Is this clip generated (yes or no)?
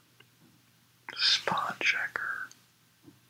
no